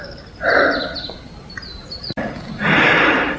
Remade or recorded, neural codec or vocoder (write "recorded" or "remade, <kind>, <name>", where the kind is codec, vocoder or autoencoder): remade, vocoder, BigVGAN v2